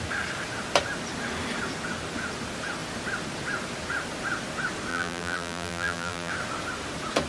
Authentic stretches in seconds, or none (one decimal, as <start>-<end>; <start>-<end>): 0.0-4.9; 6.3-7.3